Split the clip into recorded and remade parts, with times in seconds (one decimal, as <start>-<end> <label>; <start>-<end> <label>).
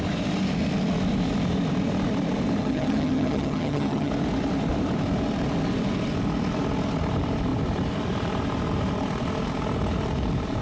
0.0-2.6 recorded; 2.6-4.1 remade; 4.1-10.6 recorded